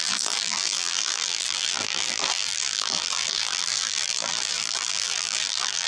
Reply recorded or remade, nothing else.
remade